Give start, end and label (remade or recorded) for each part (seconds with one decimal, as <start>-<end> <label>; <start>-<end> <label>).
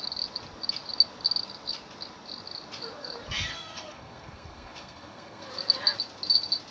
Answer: 0.0-3.5 recorded; 3.5-5.5 remade; 5.5-6.7 recorded